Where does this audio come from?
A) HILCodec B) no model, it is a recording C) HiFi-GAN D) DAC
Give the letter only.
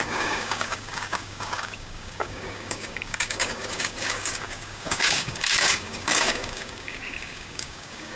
D